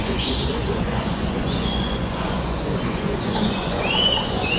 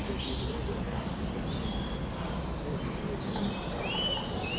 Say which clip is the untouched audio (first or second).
second